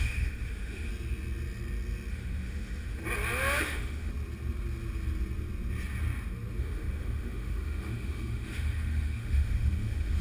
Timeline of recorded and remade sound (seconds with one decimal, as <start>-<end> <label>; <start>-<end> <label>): 0.0-0.9 remade; 0.9-2.1 recorded; 2.1-3.0 remade; 3.0-3.6 recorded; 3.6-4.1 remade; 4.1-6.6 recorded; 6.6-10.2 remade